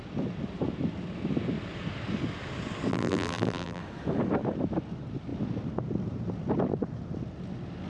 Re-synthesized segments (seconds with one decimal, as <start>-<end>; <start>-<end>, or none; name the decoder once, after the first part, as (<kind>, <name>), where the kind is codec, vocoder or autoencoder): 2.9-3.8 (vocoder, BigVGAN v2)